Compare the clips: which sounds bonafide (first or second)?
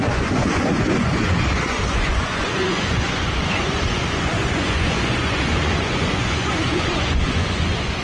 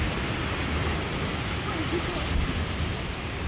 second